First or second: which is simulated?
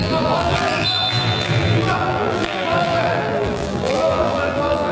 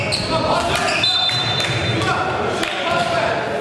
first